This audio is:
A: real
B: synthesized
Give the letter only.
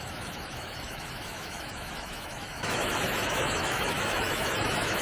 B